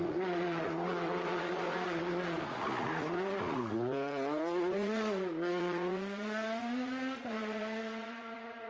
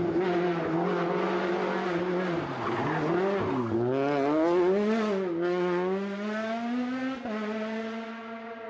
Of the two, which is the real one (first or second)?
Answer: second